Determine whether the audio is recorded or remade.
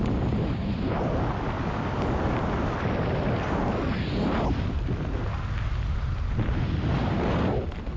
recorded